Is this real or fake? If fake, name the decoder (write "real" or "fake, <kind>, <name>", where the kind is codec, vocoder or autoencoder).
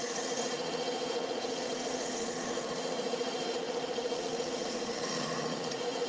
fake, vocoder, Vocos